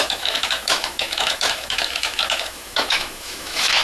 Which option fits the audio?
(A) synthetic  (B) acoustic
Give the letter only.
A